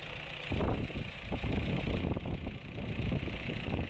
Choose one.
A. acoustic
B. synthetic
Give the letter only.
A